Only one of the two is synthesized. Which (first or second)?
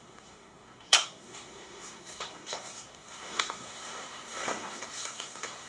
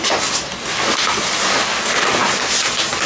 first